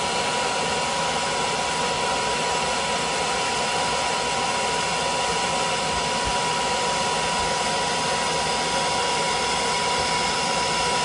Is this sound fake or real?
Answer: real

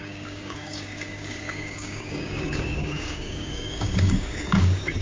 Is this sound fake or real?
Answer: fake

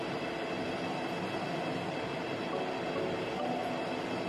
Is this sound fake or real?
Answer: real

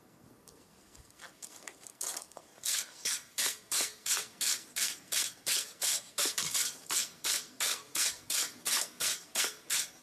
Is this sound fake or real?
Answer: fake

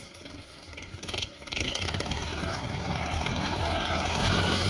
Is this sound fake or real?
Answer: fake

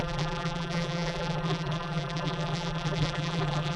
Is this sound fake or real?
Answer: fake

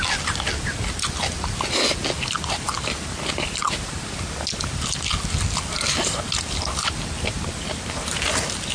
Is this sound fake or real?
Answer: real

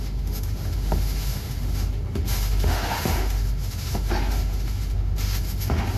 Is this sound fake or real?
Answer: fake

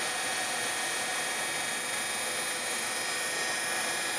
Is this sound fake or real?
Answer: real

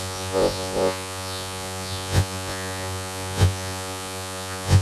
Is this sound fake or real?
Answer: fake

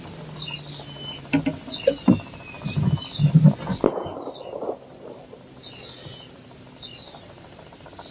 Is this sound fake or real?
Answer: real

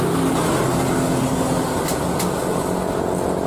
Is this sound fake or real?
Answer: real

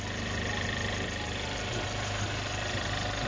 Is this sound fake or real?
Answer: real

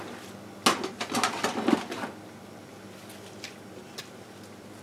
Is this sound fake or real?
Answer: real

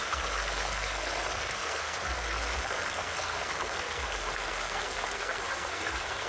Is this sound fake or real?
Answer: fake